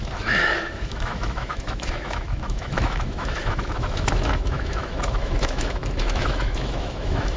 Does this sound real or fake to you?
fake